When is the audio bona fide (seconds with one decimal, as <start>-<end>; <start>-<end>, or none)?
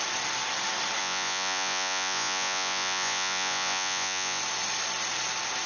0.0-1.0; 4.4-5.7